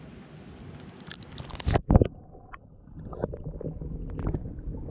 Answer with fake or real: real